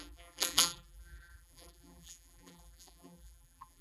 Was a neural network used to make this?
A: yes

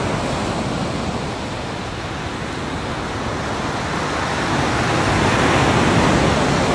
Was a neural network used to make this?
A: no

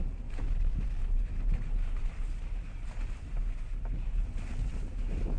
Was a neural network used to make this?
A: no